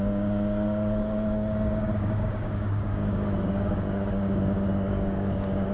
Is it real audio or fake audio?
fake